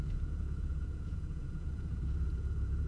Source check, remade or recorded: remade